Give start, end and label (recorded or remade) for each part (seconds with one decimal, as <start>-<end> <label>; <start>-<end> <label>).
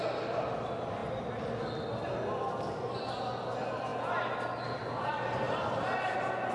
0.0-6.5 recorded